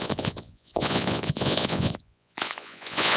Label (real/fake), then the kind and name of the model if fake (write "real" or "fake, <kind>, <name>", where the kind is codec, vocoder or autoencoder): fake, vocoder, Vocos